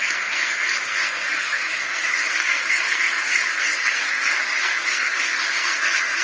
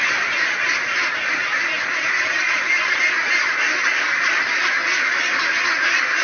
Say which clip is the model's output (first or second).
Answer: first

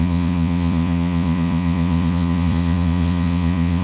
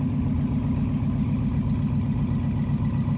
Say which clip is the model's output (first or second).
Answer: first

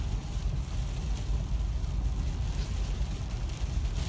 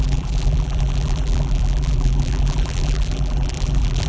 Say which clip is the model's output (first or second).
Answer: second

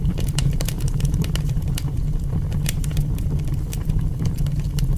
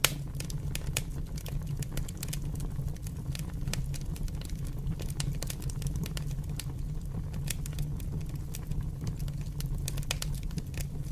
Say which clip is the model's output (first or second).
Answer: first